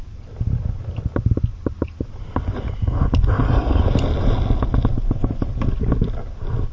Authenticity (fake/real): real